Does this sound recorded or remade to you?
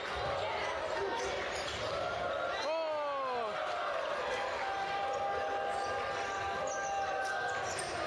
recorded